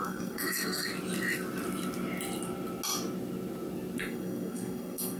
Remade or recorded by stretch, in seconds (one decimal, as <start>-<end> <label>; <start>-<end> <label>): 0.0-0.9 remade; 0.9-4.0 recorded; 4.0-5.2 remade